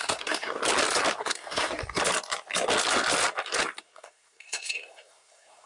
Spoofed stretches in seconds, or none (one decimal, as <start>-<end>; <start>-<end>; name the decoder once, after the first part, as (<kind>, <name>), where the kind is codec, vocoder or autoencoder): 0.0-0.6 (codec, SNAC); 1.2-1.8; 3.8-5.7

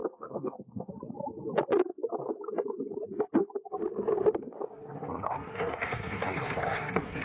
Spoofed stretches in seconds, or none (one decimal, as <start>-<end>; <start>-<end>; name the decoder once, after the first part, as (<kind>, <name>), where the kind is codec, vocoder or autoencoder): 0.0-0.9 (codec, SNAC); 4.4-7.2

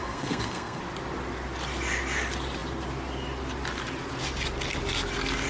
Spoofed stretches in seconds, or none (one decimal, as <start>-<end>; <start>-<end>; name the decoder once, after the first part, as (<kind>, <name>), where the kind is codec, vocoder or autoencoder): 0.0-0.8 (codec, SNAC)

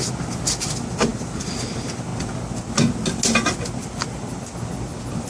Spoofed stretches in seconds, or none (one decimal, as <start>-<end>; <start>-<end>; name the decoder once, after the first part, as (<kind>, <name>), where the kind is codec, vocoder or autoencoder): none

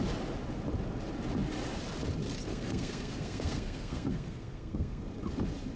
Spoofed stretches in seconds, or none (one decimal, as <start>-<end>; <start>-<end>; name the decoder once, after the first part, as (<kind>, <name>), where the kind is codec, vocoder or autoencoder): 2.5-5.0 (codec, SNAC)

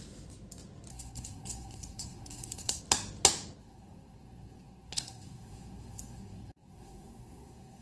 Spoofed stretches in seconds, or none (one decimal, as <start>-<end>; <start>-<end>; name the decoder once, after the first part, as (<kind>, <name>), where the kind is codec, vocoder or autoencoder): 0.9-2.8 (codec, SNAC); 3.6-7.8

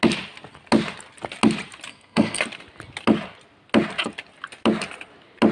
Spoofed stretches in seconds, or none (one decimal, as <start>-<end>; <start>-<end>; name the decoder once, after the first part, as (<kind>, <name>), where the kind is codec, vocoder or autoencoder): 1.9-2.4 (codec, SNAC)

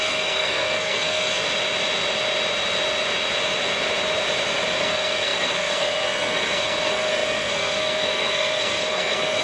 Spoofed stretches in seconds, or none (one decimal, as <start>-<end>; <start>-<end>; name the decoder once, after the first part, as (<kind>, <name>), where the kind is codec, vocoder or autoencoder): 0.0-1.4 (codec, SNAC); 4.8-9.4